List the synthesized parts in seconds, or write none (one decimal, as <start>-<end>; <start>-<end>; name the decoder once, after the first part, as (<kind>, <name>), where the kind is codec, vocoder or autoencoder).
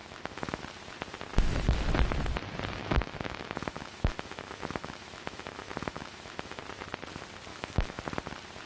0.0-0.6 (autoencoder, DAC-VAE); 2.8-6.6; 7.5-8.0